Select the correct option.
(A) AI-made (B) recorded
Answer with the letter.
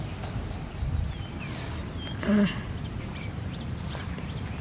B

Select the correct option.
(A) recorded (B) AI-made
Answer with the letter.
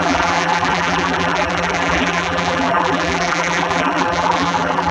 B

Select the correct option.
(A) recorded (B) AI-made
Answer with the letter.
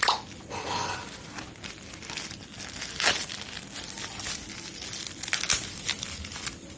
A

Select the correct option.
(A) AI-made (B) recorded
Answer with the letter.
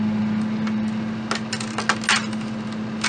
B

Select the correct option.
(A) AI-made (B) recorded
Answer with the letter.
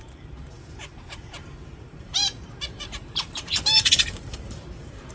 A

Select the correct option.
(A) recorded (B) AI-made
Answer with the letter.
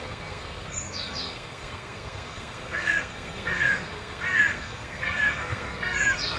B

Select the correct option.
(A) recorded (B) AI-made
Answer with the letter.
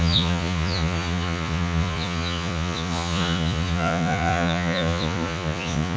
B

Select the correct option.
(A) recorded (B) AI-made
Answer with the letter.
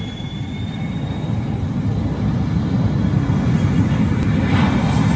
A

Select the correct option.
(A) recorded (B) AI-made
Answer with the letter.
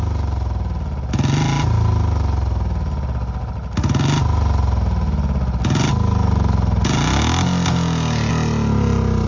A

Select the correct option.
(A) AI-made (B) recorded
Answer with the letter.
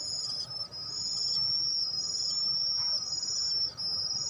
B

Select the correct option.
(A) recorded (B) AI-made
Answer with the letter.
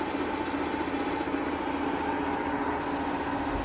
A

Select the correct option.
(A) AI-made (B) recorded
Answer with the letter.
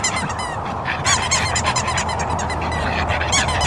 A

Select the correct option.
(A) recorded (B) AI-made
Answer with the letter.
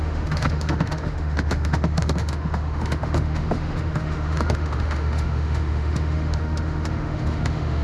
B